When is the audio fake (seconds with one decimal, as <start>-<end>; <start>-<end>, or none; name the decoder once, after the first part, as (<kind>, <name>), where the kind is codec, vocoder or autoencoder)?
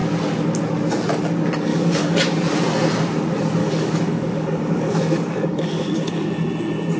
1.7-2.2 (codec, DAC); 3.6-6.3